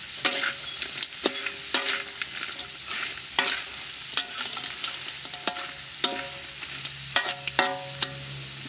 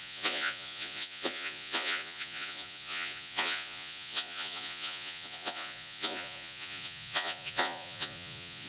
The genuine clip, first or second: first